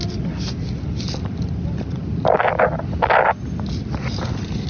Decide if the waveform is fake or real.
real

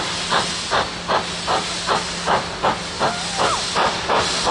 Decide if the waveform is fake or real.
real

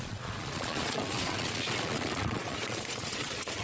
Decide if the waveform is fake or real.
fake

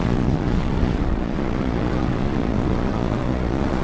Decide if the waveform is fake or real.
fake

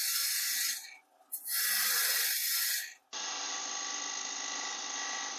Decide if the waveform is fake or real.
real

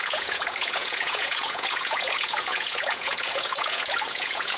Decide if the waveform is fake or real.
fake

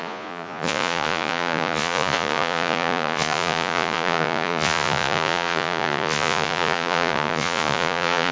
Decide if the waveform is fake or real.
fake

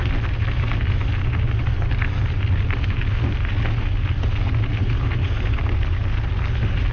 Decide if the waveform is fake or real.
real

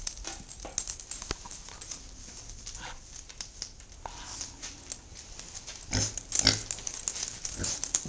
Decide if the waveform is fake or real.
real